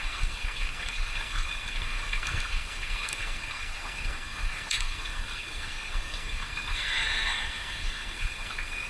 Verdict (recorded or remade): remade